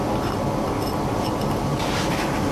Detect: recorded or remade recorded